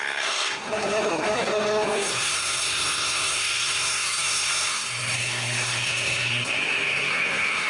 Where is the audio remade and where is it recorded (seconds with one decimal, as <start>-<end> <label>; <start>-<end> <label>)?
0.0-7.7 remade